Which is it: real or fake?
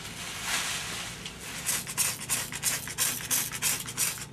real